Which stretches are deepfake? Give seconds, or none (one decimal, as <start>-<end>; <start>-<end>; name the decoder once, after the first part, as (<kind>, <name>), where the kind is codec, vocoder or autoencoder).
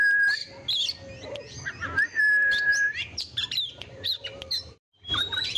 0.0-0.4 (vocoder, BigVGAN v2); 2.2-5.6